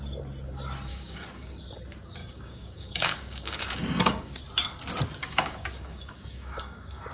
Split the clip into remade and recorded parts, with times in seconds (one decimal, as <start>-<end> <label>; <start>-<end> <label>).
0.0-0.9 recorded; 0.9-1.6 remade; 1.6-2.2 recorded; 2.2-4.4 remade; 4.4-5.2 recorded; 5.2-7.1 remade